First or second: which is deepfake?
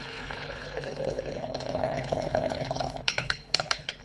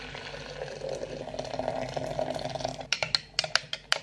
first